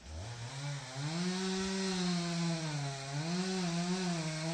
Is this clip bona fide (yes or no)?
yes